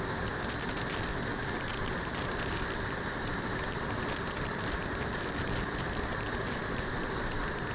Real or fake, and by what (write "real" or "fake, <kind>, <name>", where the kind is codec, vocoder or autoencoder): real